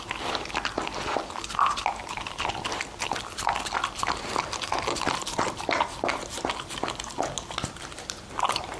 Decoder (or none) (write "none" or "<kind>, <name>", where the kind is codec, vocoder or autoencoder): none